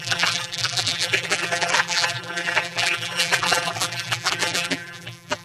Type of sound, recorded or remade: remade